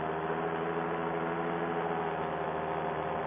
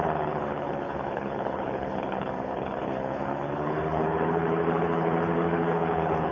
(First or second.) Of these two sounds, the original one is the first